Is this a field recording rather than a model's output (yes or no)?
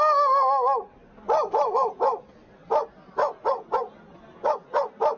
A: yes